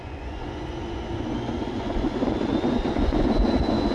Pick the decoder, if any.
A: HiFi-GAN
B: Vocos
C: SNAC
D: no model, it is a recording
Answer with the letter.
B